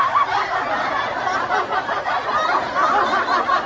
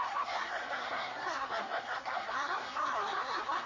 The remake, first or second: second